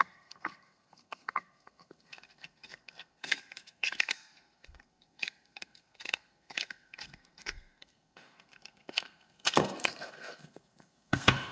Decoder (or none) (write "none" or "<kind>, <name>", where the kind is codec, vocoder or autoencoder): codec, SNAC